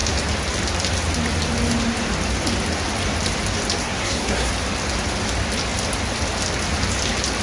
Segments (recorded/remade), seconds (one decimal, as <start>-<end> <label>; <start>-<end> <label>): 0.0-3.8 recorded; 3.8-4.5 remade; 4.5-7.4 recorded